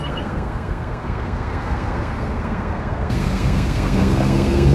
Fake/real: fake